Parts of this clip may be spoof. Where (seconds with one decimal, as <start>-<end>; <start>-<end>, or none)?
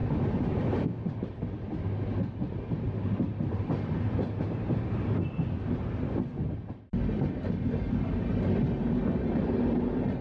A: none